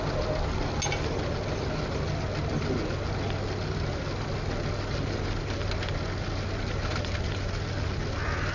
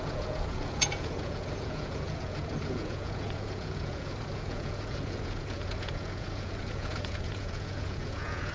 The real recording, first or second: first